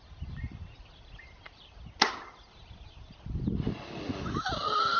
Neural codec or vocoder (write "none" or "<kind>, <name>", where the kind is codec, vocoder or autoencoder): none